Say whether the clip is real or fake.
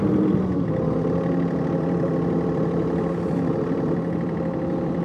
fake